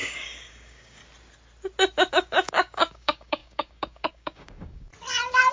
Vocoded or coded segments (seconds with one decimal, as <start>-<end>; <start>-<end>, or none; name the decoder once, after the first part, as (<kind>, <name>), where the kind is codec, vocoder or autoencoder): 0.0-1.0 (codec, DAC); 2.1-4.9